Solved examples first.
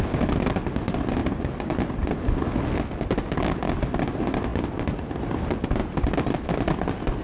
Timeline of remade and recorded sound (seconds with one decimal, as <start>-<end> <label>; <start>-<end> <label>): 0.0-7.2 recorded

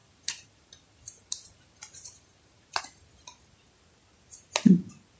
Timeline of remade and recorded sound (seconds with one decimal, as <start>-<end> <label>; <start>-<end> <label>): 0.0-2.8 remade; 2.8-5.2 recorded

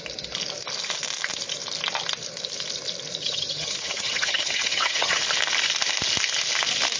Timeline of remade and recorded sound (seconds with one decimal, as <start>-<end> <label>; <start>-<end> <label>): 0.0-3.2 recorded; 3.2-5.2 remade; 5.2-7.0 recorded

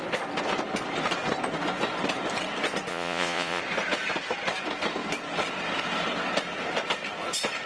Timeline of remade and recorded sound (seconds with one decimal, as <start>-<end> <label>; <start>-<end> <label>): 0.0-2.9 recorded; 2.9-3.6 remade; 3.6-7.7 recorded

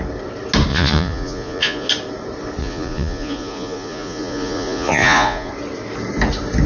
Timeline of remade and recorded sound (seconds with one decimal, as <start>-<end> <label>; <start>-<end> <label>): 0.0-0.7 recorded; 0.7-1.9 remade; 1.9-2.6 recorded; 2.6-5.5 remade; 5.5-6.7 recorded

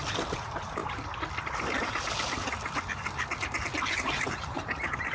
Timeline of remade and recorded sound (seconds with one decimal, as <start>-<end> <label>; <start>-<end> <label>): 0.0-0.8 remade; 0.8-3.9 recorded; 3.9-5.1 remade